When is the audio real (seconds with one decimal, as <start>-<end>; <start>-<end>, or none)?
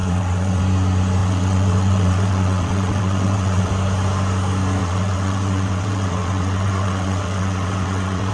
0.6-1.2; 3.7-4.8